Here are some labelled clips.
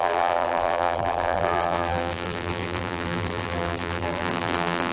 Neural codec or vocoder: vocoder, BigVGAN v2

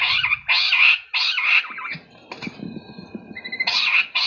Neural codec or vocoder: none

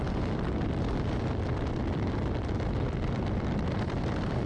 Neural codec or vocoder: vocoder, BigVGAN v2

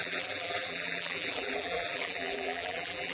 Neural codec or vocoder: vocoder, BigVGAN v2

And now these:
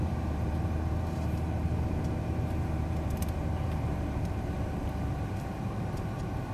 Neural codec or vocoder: vocoder, BigVGAN v2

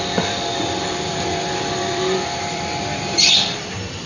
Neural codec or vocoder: vocoder, BigVGAN v2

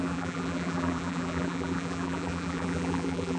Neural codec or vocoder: vocoder, BigVGAN v2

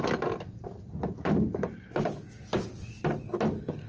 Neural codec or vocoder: none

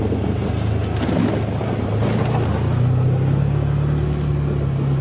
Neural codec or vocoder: none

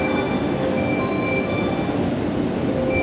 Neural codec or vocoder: none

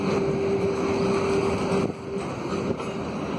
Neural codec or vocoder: none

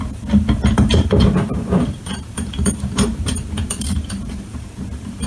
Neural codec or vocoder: vocoder, BigVGAN v2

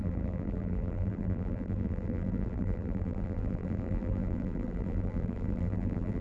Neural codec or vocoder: vocoder, BigVGAN v2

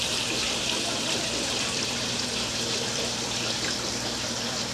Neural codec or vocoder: vocoder, BigVGAN v2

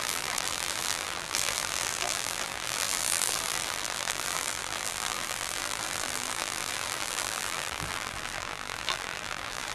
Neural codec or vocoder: vocoder, BigVGAN v2